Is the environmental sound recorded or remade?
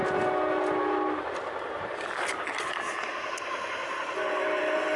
recorded